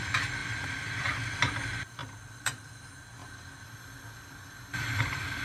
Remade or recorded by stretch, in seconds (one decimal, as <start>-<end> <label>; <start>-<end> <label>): 0.0-0.4 recorded; 0.4-1.3 remade; 1.3-2.0 recorded; 2.0-2.8 remade; 2.8-5.4 recorded

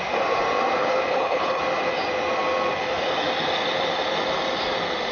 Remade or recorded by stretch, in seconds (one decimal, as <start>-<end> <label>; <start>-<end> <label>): 0.0-1.1 recorded; 1.1-1.6 remade; 1.6-5.1 recorded

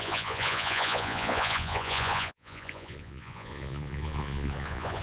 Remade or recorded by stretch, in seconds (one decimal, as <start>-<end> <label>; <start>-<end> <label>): 0.0-5.0 remade

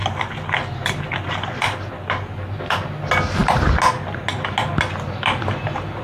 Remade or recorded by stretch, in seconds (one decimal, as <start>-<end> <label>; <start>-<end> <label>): 0.0-6.0 recorded